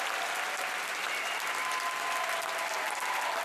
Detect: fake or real real